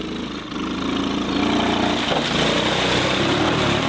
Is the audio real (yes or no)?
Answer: yes